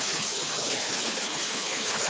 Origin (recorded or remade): remade